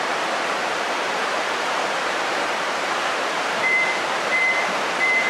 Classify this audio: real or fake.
fake